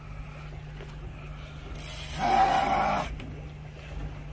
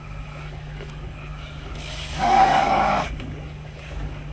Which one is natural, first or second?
first